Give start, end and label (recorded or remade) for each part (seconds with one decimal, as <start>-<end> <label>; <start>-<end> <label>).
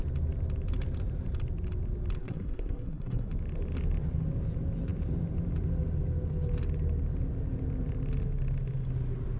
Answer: 0.0-2.2 recorded; 2.2-3.3 remade; 3.3-9.4 recorded